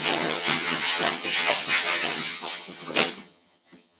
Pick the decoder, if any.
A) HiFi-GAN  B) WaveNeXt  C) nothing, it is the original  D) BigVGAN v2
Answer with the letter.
A